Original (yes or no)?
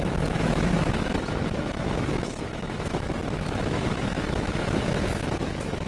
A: no